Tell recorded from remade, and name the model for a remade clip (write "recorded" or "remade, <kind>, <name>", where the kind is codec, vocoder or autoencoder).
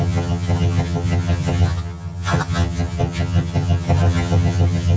remade, vocoder, HiFi-GAN